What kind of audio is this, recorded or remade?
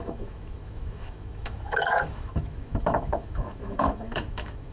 remade